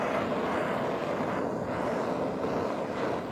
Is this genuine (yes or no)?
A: yes